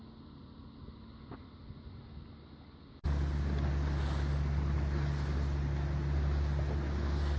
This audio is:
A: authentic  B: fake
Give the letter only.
A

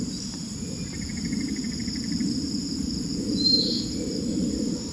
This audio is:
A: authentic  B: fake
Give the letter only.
B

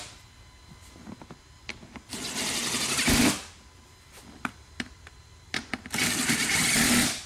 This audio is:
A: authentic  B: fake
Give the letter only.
A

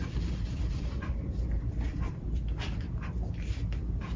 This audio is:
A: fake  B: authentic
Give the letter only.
B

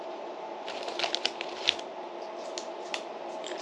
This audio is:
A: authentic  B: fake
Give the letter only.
A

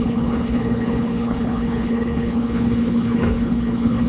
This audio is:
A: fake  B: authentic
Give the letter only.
A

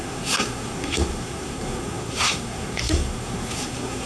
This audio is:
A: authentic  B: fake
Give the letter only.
B